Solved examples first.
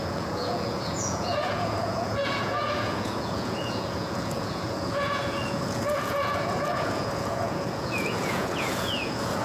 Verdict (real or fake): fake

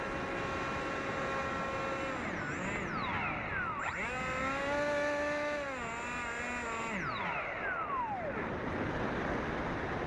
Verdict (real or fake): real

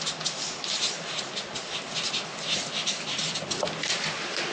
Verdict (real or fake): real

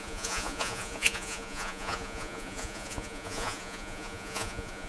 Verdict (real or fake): fake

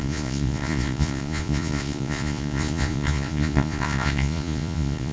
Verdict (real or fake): fake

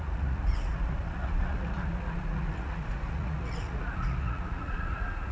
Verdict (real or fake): fake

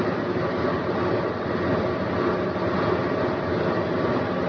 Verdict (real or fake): real